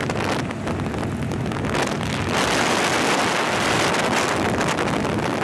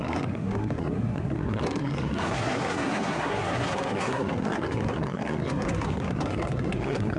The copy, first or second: second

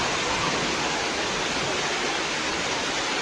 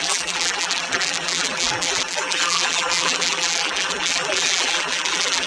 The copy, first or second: second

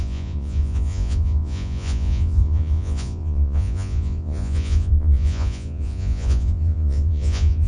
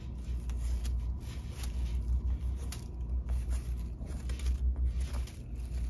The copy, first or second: first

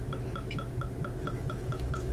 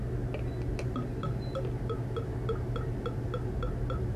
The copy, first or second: first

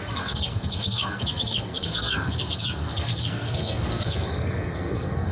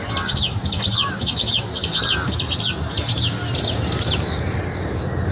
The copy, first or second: first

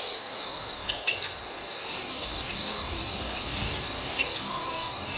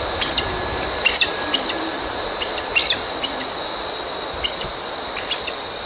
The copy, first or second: first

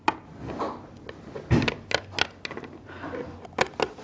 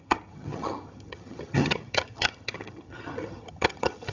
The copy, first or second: second